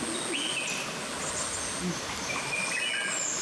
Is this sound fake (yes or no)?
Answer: no